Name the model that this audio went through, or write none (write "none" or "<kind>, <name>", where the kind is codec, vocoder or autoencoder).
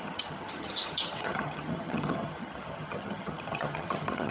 vocoder, HiFi-GAN